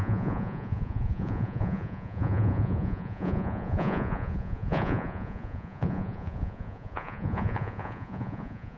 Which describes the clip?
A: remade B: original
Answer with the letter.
A